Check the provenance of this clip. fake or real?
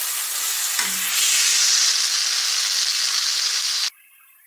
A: real